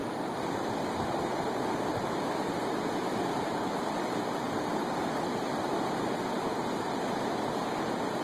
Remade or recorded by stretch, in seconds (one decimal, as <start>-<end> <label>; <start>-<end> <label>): 0.0-1.3 remade; 1.3-3.1 recorded; 3.1-5.6 remade; 5.6-8.2 recorded